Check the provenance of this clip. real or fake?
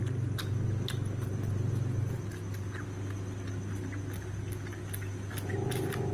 real